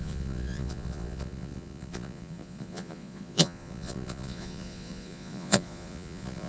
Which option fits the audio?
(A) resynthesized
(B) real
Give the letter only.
A